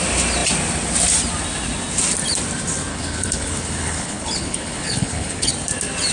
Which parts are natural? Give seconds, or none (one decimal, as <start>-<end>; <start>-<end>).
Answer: 0.0-2.9; 5.5-6.1